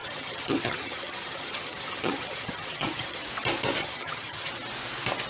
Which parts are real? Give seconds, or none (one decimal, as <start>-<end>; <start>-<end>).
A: 3.2-3.8; 4.5-5.3